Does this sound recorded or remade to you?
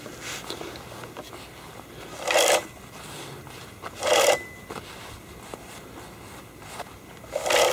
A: recorded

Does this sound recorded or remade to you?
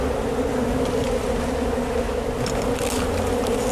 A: recorded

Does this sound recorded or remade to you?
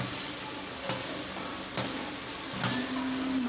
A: remade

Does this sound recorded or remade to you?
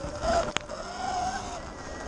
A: recorded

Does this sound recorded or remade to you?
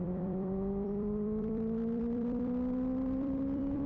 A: remade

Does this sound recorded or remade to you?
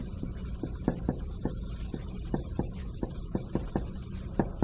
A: remade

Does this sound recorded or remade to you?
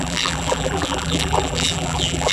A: remade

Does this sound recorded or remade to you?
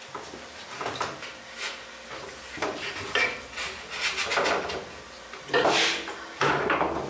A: recorded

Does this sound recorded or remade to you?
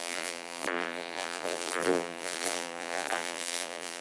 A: remade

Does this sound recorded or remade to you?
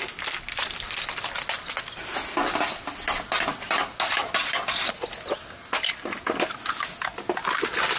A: recorded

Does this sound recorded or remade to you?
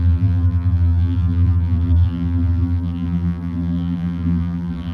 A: remade